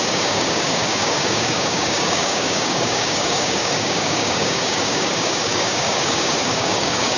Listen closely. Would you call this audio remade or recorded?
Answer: remade